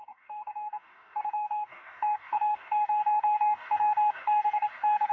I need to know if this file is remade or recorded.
remade